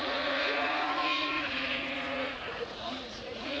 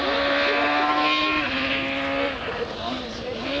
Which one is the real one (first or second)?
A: second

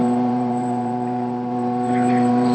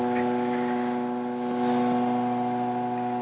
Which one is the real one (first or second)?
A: second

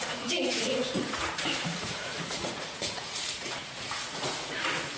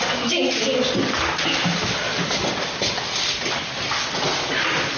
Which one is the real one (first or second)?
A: second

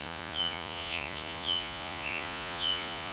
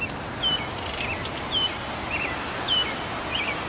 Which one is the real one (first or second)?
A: second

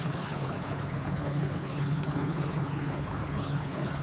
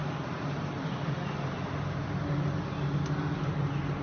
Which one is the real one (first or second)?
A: second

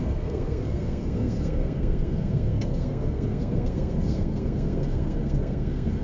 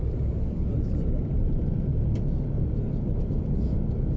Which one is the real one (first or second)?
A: second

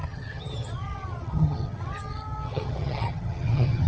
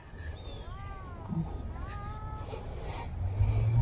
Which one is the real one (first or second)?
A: second